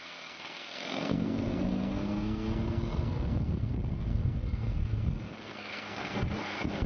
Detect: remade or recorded remade